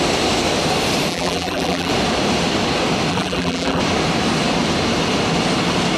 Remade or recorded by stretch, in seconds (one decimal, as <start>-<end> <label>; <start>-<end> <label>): 0.0-1.1 recorded; 1.1-1.9 remade; 1.9-3.1 recorded; 3.1-3.8 remade; 3.8-6.0 recorded